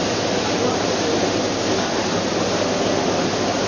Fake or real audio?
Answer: real